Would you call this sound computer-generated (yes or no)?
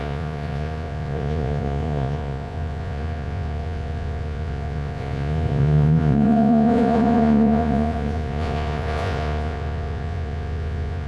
yes